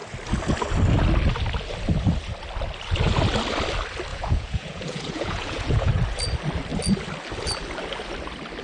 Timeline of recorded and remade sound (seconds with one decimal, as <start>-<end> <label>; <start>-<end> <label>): 0.0-4.1 recorded; 4.1-5.9 remade; 5.9-8.6 recorded